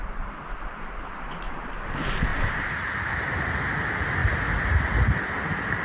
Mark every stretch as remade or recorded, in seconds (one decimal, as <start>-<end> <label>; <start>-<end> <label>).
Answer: 0.0-2.3 recorded; 2.3-3.1 remade; 3.1-5.8 recorded